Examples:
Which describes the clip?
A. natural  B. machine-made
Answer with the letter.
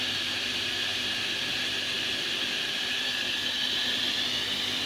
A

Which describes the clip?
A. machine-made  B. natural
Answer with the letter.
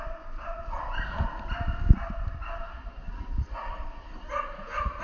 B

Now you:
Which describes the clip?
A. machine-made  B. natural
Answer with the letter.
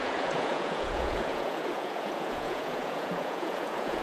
A